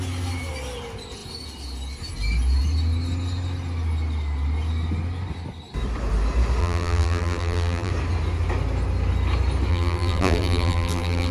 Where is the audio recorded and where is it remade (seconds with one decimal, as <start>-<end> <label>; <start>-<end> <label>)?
0.0-6.6 recorded; 6.6-7.9 remade; 7.9-9.7 recorded; 9.7-11.3 remade